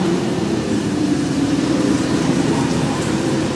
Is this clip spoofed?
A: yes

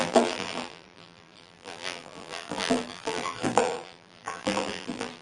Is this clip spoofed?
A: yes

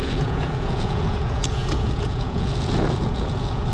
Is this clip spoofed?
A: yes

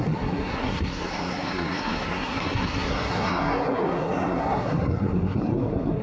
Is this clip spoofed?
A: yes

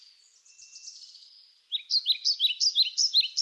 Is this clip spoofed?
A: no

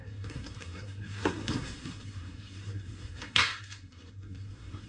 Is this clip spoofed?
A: yes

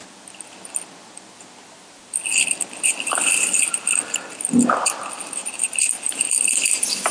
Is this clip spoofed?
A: no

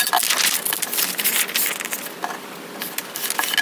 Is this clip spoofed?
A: no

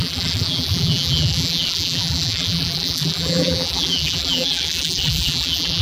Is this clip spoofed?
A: yes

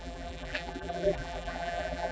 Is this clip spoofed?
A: yes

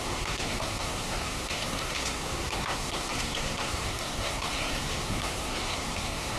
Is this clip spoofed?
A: yes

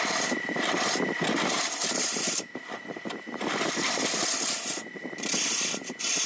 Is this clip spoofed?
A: no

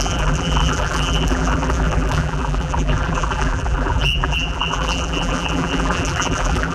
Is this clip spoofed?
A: yes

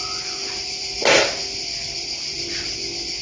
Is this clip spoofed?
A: no